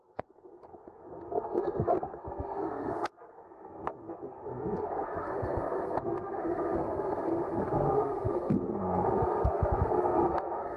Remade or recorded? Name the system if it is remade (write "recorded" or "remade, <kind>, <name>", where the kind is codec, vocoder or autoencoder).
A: remade, codec, SNAC